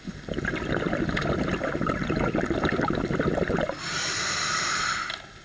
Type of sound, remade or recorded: recorded